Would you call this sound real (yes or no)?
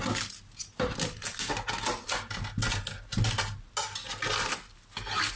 yes